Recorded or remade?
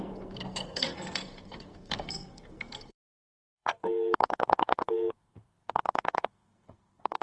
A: remade